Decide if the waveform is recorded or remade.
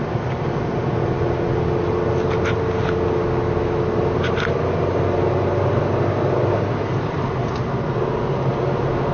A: recorded